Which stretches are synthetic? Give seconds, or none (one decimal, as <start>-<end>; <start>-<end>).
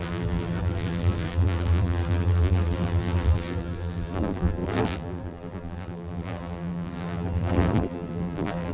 0.0-8.7